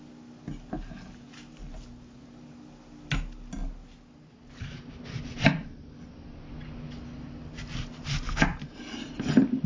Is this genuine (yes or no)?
yes